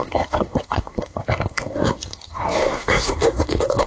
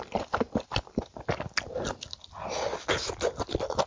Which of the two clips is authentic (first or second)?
second